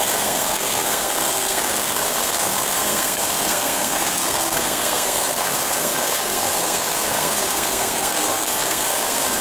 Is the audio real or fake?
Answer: fake